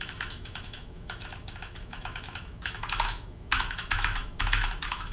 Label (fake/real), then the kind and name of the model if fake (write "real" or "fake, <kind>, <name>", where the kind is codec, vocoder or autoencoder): fake, autoencoder, DAC-VAE